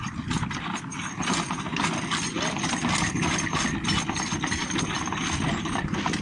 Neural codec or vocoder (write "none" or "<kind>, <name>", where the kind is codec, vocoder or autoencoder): vocoder, BigVGAN v2